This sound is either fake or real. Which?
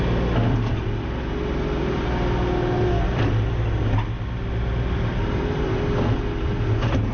real